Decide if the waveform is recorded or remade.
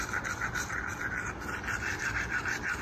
remade